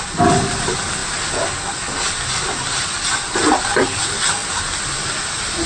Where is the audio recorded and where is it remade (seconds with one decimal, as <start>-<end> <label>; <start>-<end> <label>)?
0.0-5.7 recorded